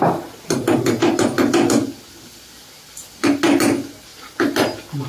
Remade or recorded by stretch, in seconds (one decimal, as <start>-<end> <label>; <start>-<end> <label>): 0.0-5.1 recorded